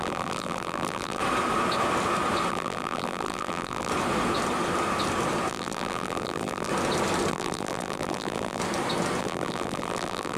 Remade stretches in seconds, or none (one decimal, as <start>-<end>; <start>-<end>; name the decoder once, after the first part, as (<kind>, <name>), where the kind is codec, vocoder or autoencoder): 0.0-1.2 (vocoder, BigVGAN v2); 2.5-3.9; 5.5-6.7; 7.3-8.6; 9.2-10.4